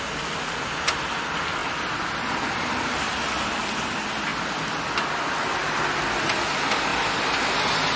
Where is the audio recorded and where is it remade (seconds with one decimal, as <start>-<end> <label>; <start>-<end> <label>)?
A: 0.0-1.6 recorded; 1.6-2.9 remade; 2.9-4.3 recorded; 4.3-4.8 remade; 4.8-6.9 recorded; 6.9-7.5 remade; 7.5-8.0 recorded